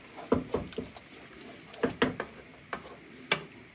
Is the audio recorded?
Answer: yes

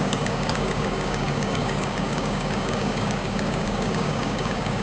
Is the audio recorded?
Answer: no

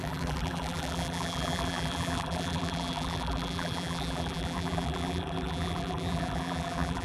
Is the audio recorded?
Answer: no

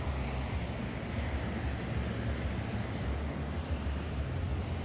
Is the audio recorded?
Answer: yes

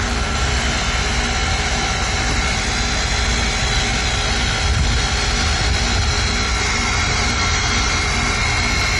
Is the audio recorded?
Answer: yes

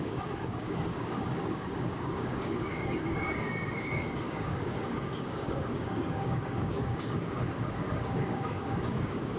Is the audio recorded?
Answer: no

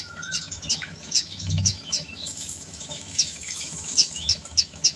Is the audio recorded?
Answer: no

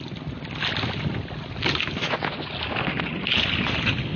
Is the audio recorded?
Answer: yes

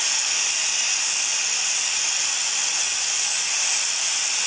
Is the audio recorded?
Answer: yes